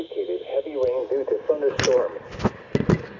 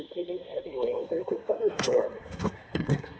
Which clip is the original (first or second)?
first